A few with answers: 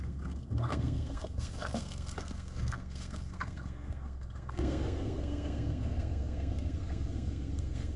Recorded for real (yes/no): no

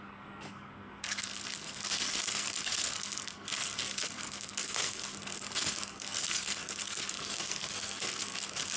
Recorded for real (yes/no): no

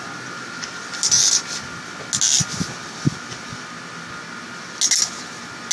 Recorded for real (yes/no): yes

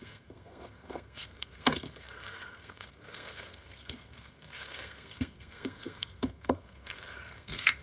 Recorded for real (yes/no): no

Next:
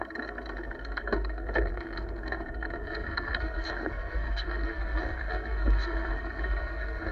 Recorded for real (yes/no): no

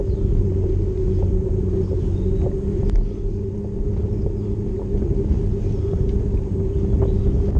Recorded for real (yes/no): yes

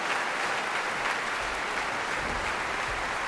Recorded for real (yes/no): yes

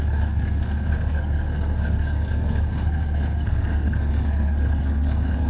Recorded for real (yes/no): no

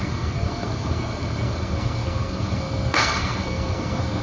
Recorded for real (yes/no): no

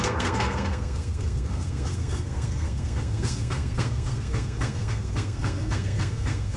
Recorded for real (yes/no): no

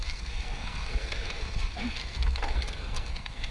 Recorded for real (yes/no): no